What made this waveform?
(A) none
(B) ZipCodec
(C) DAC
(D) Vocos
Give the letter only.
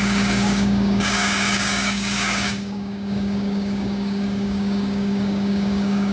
C